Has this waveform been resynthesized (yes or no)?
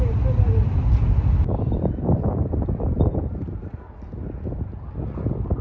no